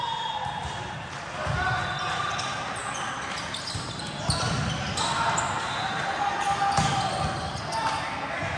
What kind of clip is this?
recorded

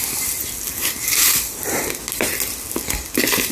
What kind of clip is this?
recorded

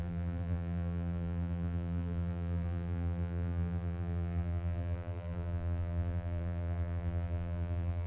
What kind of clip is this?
remade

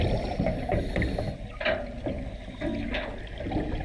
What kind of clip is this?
recorded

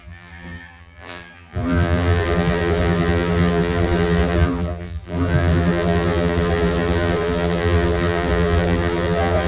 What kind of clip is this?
remade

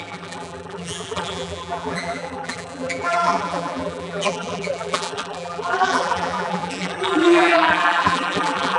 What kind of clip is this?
remade